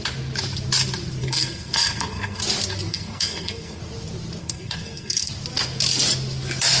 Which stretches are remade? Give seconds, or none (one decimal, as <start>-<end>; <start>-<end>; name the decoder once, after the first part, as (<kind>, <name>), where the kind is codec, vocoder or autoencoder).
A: 1.2-2.4 (codec, SNAC); 2.9-3.8; 4.4-5.3